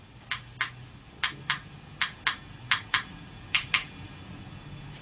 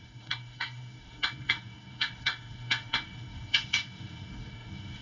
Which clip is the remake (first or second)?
second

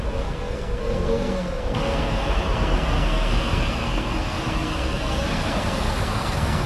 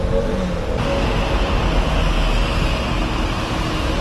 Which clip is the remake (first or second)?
first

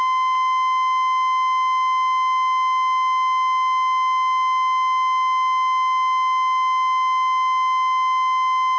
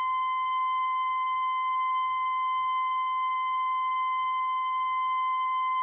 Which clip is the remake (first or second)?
second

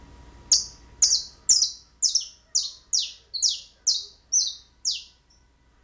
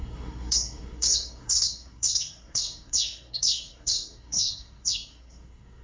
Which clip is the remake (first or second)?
second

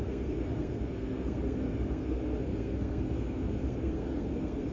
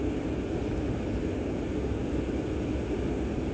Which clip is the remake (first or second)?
first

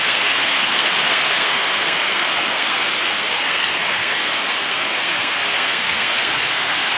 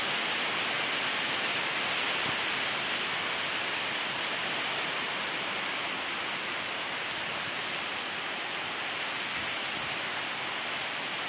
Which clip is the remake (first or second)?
first